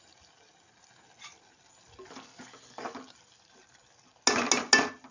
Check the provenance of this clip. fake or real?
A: real